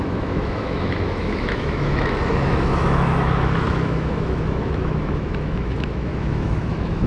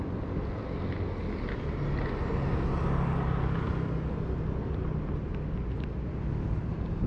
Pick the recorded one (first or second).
second